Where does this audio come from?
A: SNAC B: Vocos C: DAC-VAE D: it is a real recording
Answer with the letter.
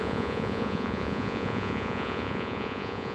B